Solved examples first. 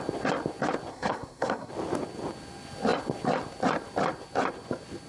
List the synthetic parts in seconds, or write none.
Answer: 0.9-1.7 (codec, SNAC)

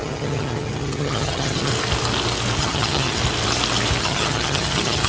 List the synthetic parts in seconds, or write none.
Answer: 0.0-1.7 (vocoder, HiFi-GAN); 2.6-3.2; 4.0-5.1